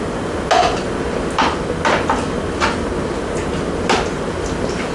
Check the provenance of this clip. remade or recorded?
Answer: recorded